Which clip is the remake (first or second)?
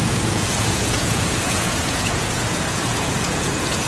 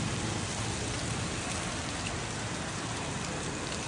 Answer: first